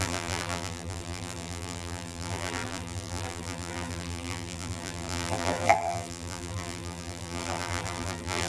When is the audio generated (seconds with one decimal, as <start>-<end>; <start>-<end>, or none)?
0.0-8.5